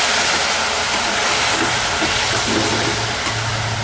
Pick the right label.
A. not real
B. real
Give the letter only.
B